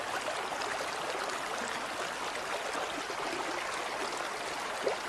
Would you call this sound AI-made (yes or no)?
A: no